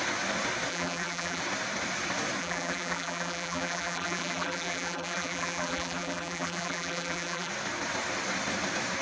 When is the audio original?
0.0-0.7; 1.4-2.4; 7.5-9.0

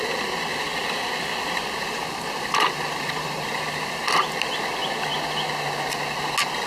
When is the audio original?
0.0-0.5; 4.1-6.7

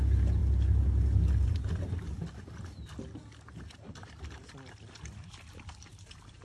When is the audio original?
0.0-6.4

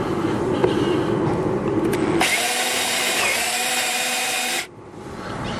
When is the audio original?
0.6-2.6

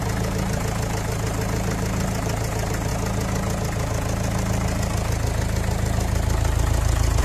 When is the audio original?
2.9-7.2